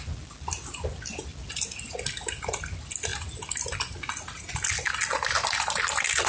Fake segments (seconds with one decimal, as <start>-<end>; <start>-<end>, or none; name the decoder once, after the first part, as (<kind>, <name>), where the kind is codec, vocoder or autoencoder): none